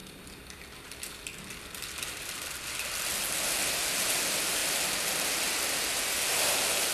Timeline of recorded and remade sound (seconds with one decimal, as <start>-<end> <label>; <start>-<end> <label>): 0.0-6.9 recorded